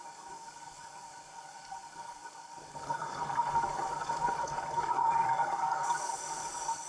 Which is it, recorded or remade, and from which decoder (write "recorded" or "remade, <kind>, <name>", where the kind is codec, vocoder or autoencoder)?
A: remade, codec, DAC